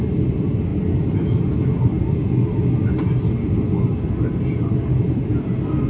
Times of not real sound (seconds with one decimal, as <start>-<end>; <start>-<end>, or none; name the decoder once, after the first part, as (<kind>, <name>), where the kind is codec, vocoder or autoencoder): none